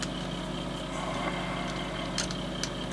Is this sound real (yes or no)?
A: yes